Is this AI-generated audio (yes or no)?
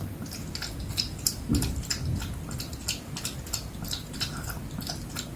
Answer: no